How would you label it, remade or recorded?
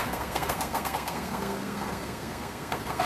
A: remade